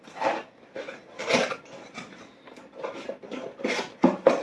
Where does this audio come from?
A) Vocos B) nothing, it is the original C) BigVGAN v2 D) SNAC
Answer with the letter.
B